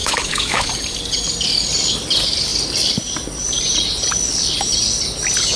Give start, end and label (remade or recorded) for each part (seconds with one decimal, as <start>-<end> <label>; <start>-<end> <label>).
0.0-0.7 remade; 0.7-5.6 recorded